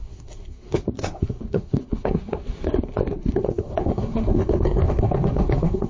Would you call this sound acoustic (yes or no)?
no